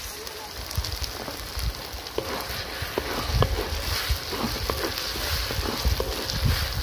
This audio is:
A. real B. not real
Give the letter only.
A